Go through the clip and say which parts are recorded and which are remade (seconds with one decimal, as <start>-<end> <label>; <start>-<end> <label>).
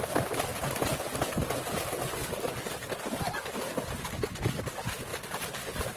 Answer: 0.0-0.5 recorded; 0.5-1.0 remade; 1.0-5.1 recorded; 5.1-6.0 remade